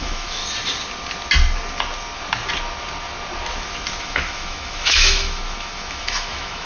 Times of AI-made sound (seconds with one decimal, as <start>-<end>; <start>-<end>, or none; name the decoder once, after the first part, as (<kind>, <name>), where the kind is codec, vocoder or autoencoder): 0.0-0.4 (autoencoder, DAC-VAE); 4.0-6.7